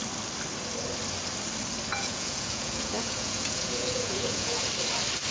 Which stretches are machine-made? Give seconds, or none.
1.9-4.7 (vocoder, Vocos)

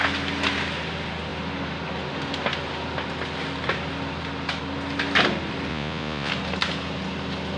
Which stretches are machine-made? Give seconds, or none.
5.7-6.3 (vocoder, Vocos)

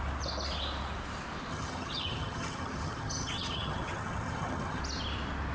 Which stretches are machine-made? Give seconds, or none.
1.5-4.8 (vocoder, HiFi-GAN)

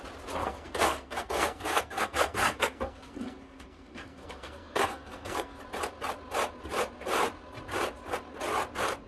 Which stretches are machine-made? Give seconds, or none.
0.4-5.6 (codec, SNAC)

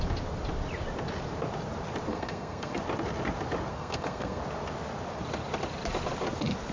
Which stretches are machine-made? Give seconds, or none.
2.1-2.8 (codec, SNAC); 3.7-4.4

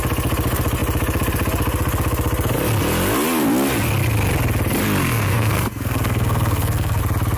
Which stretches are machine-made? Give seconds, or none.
5.0-7.0 (codec, SNAC)